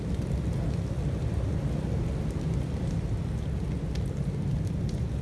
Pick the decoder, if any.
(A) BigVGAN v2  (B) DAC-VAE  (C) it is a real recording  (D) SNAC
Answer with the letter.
C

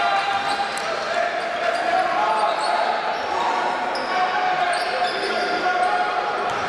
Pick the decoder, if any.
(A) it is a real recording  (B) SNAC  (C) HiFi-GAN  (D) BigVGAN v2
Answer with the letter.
A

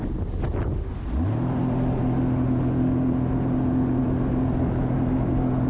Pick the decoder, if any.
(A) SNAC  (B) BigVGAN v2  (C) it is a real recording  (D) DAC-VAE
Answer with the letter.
C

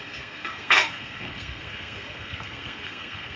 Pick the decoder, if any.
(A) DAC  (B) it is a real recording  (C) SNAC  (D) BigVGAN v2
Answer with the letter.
C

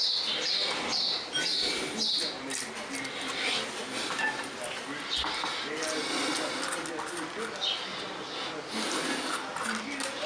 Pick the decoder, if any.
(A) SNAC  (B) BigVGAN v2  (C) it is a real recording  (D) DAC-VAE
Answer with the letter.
C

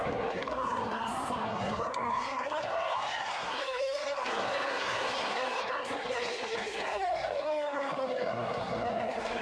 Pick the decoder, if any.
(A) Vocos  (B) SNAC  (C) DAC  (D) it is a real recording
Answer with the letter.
B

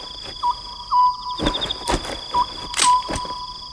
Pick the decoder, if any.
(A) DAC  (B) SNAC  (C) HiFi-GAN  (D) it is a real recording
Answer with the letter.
D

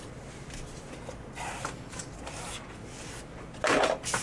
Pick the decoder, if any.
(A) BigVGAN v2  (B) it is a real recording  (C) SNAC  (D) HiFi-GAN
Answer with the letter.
B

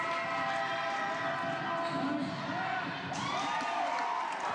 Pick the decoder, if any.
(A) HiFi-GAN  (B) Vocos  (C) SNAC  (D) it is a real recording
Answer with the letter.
D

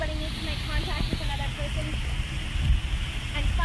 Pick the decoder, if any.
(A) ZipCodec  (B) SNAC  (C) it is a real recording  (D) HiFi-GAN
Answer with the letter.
C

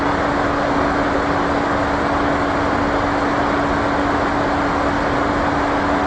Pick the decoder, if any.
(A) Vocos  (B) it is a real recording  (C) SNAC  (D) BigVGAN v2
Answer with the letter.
B